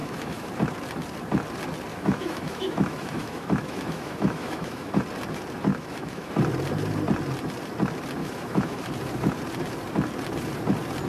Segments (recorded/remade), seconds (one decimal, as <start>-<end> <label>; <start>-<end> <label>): 0.0-0.5 remade; 0.5-1.9 recorded; 1.9-5.0 remade; 5.0-5.7 recorded; 5.7-6.3 remade; 6.3-8.2 recorded; 8.2-8.9 remade; 8.9-11.1 recorded